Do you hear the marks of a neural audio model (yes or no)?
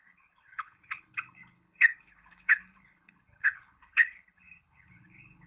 yes